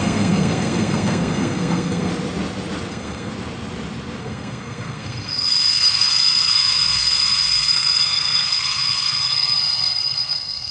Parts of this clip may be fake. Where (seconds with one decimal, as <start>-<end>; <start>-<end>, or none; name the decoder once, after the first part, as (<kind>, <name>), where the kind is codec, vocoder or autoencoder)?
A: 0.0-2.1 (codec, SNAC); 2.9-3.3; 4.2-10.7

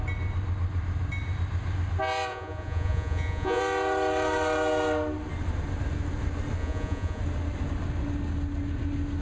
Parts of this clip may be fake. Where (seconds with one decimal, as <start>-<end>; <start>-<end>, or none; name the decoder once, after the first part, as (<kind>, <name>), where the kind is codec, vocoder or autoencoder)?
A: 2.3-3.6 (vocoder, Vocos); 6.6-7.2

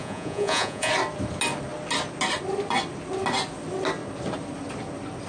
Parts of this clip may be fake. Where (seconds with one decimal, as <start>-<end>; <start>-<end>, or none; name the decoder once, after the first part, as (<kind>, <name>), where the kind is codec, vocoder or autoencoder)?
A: 0.0-0.9 (vocoder, Vocos)